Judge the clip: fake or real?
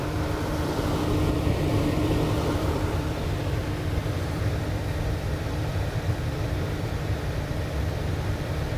fake